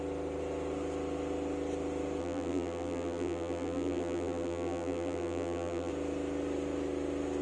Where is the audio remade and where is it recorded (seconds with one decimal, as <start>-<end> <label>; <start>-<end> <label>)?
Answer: 0.0-2.2 recorded; 2.2-5.9 remade; 5.9-7.4 recorded